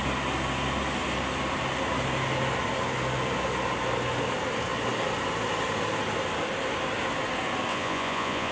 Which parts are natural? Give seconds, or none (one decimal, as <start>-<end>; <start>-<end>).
0.0-7.7